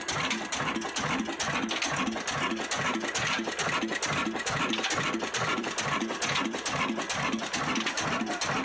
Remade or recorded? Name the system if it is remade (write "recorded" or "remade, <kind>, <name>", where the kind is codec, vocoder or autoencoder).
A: remade, vocoder, BigVGAN v2